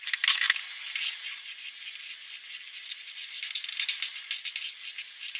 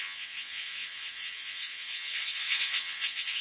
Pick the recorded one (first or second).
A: first